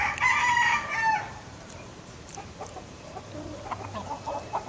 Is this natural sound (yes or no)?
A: no